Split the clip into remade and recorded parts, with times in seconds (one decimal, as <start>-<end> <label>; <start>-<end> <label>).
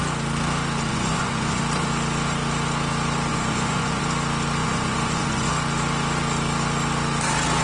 0.0-0.9 recorded; 0.9-1.6 remade; 1.6-3.3 recorded; 3.3-4.0 remade; 4.0-4.6 recorded; 4.6-5.5 remade; 5.5-7.6 recorded